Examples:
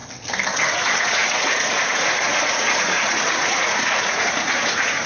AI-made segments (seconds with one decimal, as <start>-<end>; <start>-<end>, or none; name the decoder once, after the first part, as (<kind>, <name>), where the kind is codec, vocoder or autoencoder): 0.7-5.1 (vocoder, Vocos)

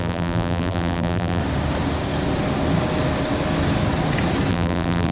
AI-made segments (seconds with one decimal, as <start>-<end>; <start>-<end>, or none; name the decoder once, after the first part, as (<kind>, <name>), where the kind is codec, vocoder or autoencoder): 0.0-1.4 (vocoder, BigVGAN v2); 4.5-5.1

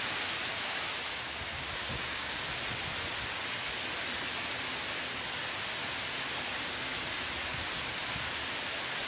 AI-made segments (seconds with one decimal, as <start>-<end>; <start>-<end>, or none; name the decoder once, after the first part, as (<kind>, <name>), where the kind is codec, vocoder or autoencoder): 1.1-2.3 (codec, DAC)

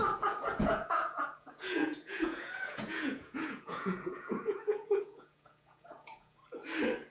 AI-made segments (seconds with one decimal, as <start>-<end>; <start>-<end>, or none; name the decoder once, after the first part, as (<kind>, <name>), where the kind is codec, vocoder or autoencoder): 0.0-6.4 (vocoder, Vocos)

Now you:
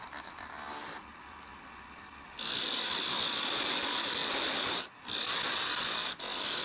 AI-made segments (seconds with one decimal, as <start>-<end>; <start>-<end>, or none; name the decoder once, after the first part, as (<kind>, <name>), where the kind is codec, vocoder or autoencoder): none